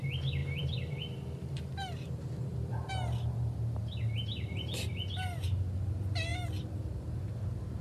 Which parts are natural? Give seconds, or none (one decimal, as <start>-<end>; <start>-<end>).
0.0-0.4; 2.9-6.3